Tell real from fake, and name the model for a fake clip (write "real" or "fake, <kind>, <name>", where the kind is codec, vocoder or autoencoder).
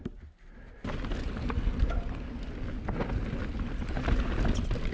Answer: real